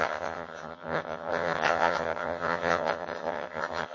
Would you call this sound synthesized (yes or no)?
yes